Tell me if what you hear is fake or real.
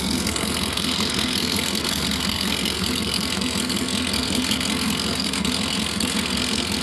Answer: fake